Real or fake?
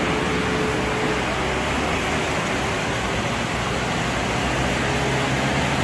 real